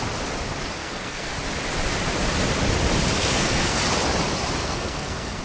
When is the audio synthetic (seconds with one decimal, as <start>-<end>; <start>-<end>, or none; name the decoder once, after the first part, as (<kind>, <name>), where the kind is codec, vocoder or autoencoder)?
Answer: 0.8-1.3 (codec, SNAC); 3.2-3.8; 4.6-5.4